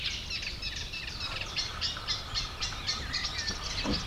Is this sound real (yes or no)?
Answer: no